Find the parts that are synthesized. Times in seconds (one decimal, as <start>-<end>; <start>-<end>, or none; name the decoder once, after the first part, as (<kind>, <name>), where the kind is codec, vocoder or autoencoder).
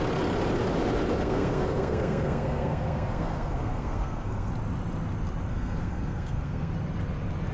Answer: 1.2-4.5 (codec, SNAC); 5.5-6.7